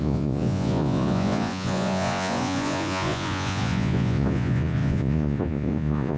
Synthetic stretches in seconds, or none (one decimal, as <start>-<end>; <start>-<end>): 0.0-6.2